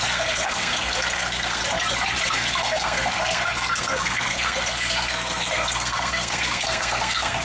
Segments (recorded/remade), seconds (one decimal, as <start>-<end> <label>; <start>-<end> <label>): 0.0-1.6 remade; 1.6-2.3 recorded; 2.3-7.4 remade